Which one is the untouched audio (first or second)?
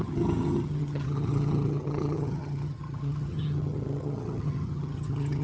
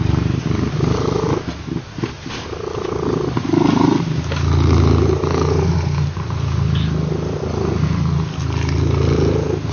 second